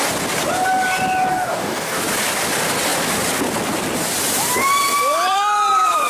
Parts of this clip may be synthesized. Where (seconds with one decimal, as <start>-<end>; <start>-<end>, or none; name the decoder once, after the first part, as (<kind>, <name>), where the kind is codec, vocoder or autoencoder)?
1.3-2.0 (codec, DAC)